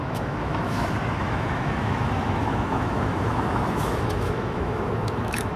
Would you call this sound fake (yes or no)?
yes